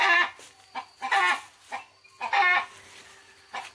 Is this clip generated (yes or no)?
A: no